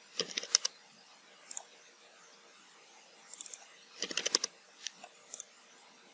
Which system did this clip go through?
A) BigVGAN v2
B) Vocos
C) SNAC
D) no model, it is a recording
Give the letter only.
A